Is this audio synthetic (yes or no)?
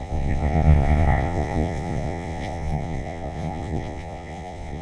yes